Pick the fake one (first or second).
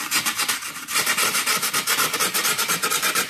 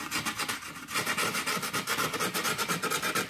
first